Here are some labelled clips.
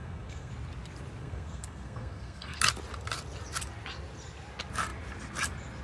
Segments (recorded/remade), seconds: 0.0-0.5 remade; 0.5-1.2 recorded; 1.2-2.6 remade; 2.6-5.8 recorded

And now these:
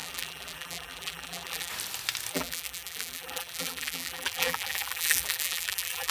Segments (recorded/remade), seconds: 0.0-1.7 remade; 1.7-2.3 recorded; 2.3-6.1 remade

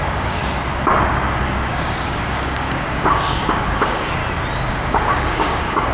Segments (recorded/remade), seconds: 0.0-0.4 remade; 0.4-1.4 recorded; 1.4-4.2 remade; 4.2-4.7 recorded; 4.7-5.9 remade

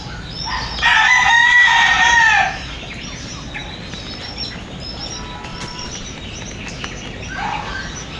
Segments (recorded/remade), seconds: 0.0-5.5 recorded; 5.5-6.4 remade; 6.4-8.2 recorded